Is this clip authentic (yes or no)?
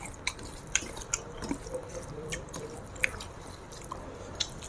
no